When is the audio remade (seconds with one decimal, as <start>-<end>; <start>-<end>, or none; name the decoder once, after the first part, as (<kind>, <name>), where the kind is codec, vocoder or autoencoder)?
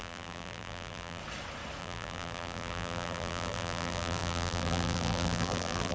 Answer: 0.0-1.2 (vocoder, BigVGAN v2); 1.8-5.9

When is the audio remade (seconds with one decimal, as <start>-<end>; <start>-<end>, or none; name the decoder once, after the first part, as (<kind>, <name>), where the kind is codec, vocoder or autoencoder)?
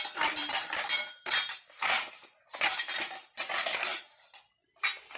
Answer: 0.4-3.5 (vocoder, BigVGAN v2)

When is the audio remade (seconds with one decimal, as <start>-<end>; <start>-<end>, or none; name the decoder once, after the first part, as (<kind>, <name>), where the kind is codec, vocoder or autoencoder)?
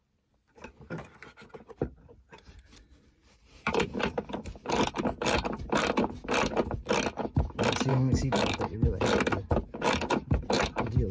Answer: 7.9-8.6 (autoencoder, DAC-VAE)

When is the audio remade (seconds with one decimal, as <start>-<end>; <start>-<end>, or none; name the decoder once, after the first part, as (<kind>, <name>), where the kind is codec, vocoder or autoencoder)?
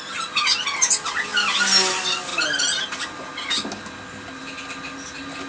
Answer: none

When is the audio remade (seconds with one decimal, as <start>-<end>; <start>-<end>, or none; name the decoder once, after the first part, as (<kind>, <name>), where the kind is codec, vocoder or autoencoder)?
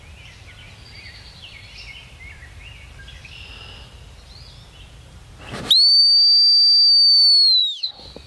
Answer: none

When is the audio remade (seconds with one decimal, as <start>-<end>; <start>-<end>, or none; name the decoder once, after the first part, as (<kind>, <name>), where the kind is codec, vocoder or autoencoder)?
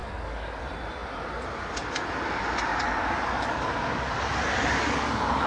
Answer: 0.0-0.6 (codec, DAC); 2.7-5.5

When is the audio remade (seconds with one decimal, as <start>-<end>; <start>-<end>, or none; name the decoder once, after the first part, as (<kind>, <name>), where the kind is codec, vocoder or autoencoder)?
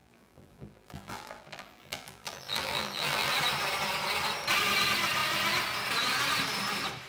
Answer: 0.0-3.3 (vocoder, BigVGAN v2)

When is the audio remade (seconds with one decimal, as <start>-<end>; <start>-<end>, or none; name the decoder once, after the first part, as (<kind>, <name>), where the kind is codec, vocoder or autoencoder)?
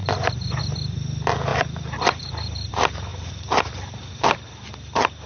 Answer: 0.0-0.6 (vocoder, BigVGAN v2); 1.5-2.7; 3.1-4.1